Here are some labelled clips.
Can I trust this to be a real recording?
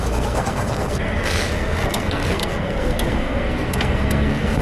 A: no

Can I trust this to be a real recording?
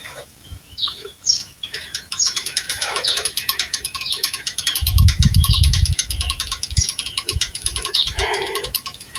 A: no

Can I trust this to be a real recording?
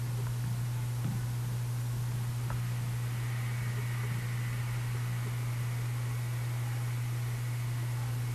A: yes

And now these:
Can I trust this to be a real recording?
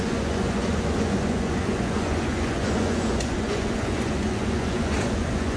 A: no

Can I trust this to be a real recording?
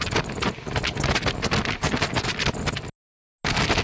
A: yes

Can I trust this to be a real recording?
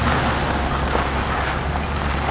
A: yes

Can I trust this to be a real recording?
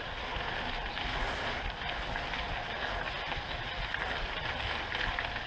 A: yes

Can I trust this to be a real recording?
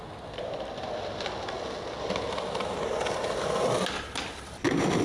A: yes